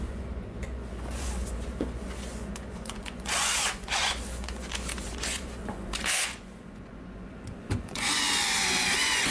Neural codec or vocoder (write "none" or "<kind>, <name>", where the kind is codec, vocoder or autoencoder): vocoder, Vocos